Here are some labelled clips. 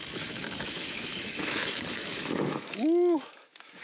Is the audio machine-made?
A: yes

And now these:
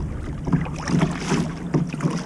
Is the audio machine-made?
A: no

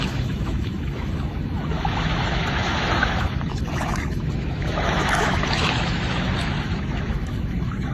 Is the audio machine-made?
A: yes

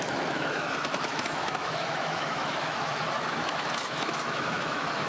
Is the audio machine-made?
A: yes